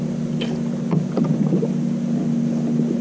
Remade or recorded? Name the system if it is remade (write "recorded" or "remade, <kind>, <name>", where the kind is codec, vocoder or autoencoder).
recorded